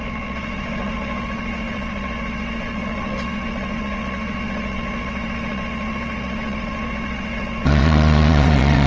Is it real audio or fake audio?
fake